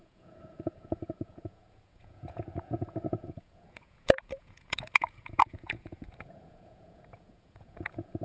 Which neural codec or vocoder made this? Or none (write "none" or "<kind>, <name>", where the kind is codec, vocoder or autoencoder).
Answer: vocoder, Vocos